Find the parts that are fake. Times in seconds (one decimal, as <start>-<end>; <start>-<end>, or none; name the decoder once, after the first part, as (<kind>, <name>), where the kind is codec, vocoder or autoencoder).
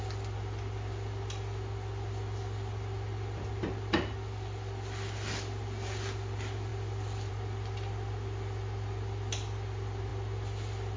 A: none